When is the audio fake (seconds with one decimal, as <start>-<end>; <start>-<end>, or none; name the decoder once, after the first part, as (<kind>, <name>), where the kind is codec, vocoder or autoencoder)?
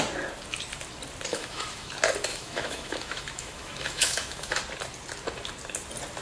1.3-1.9 (autoencoder, DAC-VAE); 2.3-4.6